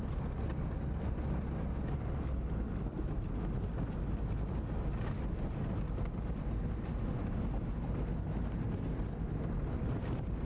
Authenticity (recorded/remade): recorded